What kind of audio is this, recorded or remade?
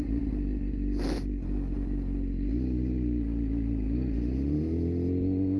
recorded